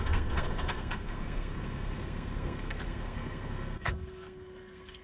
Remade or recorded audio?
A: remade